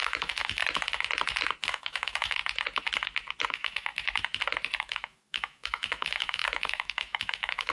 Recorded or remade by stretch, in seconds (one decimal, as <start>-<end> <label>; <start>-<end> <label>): 0.0-0.6 remade; 0.6-1.7 recorded; 1.7-2.4 remade; 2.4-3.5 recorded; 3.5-3.9 remade; 3.9-4.8 recorded; 4.8-7.7 remade